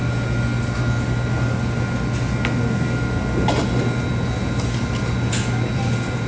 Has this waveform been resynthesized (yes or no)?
no